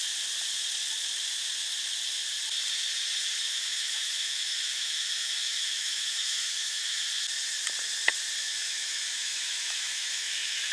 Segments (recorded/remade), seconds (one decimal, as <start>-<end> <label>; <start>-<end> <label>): 0.0-3.4 recorded; 3.4-7.0 remade; 7.0-8.4 recorded; 8.4-10.7 remade